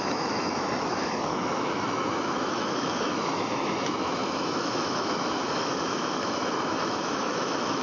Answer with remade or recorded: remade